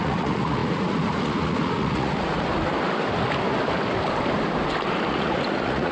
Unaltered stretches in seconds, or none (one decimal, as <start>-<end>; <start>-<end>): 2.5-5.1

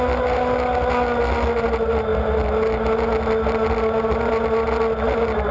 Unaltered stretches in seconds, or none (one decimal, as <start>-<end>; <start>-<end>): 0.0-5.5

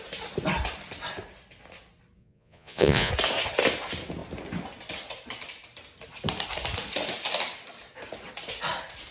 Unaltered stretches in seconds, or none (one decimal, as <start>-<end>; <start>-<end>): 0.0-2.2; 3.1-9.1

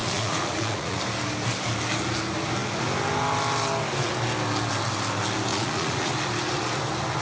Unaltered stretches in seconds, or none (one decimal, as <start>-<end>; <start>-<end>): 1.0-5.5; 6.1-7.2

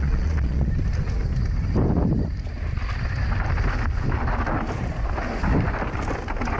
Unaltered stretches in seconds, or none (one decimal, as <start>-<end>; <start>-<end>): 0.7-6.6

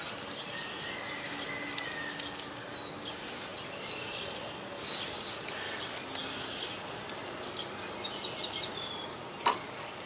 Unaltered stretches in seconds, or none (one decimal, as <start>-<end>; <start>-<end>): 0.0-10.1

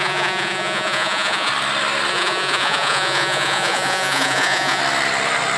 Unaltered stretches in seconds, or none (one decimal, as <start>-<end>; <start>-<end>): 1.5-2.1; 4.8-5.6

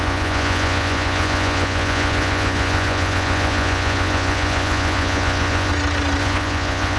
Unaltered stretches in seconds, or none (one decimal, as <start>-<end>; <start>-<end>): 5.7-6.2